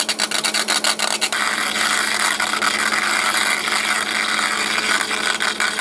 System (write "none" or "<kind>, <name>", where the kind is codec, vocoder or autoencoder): none